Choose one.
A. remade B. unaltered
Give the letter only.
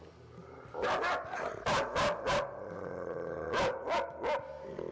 B